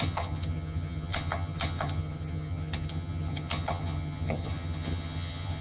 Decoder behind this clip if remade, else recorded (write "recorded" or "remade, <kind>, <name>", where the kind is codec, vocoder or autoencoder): remade, vocoder, HiFi-GAN